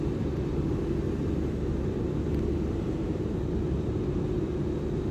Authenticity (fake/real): real